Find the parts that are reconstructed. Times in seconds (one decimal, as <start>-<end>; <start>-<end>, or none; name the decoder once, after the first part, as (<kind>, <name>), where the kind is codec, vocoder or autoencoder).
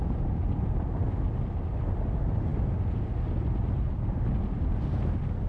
none